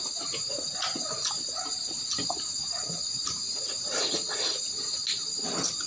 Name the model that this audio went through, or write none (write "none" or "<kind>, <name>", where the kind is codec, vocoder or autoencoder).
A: none